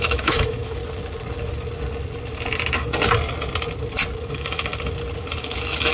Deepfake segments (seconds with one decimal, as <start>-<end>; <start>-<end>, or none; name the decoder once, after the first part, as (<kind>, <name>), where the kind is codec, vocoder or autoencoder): 0.0-0.8 (autoencoder, DAC-VAE); 4.3-4.7; 5.4-5.9